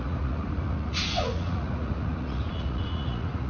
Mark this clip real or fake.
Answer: fake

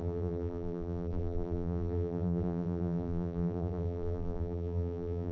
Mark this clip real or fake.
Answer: fake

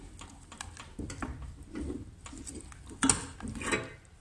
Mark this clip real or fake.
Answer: real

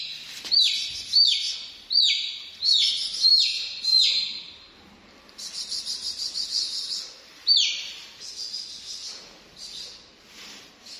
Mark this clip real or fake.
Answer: real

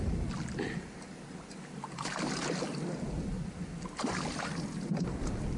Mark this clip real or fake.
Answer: real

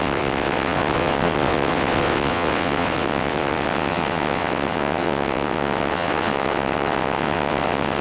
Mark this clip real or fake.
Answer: fake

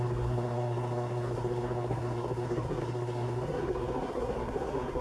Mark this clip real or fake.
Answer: fake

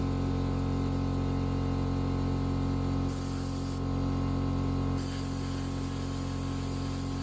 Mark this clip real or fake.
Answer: real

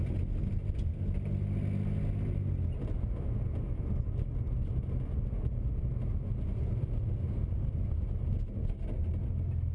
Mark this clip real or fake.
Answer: real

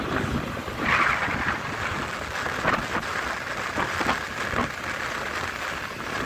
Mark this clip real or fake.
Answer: real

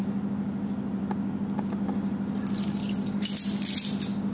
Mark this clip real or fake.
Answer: real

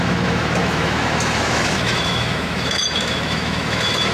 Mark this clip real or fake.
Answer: fake